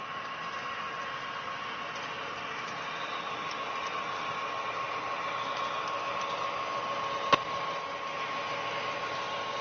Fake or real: real